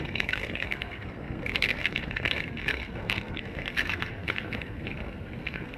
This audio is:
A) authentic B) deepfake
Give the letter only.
B